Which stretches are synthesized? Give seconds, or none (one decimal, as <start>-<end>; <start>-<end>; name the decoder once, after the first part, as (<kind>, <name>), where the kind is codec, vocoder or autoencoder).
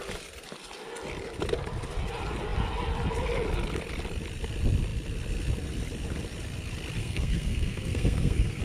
7.0-8.6 (codec, SNAC)